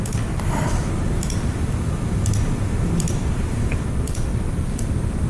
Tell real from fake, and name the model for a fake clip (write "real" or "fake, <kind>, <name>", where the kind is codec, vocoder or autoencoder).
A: fake, vocoder, BigVGAN v2